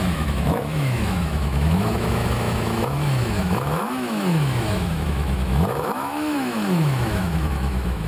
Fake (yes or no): yes